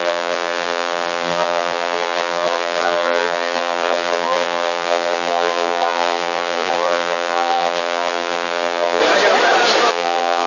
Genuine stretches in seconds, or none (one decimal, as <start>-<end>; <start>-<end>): 9.0-9.9